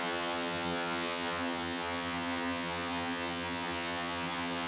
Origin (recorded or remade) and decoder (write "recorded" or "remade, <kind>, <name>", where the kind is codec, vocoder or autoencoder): remade, vocoder, HiFi-GAN